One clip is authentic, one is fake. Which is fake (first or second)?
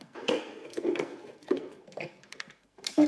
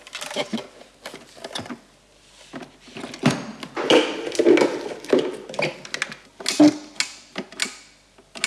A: first